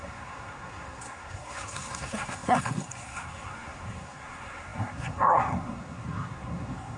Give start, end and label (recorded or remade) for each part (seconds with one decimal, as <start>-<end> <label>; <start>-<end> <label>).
0.0-7.0 remade

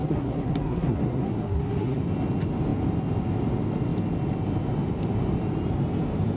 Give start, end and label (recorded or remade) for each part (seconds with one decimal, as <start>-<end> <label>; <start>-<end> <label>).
0.0-2.0 remade; 2.0-6.4 recorded

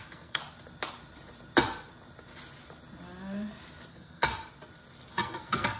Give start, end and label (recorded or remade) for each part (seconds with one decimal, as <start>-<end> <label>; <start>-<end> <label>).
0.0-0.4 remade; 0.4-3.9 recorded; 3.9-4.3 remade; 4.3-5.1 recorded; 5.1-5.8 remade

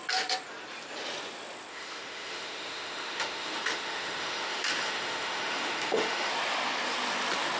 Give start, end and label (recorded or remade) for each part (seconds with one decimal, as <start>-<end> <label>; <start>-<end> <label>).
0.0-1.7 recorded; 1.7-6.3 remade; 6.3-7.6 recorded

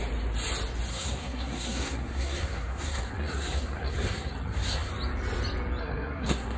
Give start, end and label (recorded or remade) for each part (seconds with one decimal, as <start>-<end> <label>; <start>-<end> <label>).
0.0-0.9 recorded; 0.9-4.9 remade; 4.9-5.8 recorded; 5.8-6.6 remade

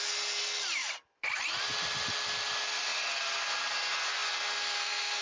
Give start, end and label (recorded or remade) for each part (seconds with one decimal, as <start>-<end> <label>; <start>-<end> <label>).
0.0-5.2 recorded

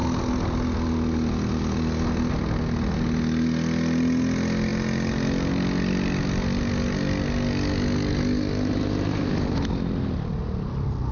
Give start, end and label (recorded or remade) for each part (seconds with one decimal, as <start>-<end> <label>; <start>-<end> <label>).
0.0-11.1 recorded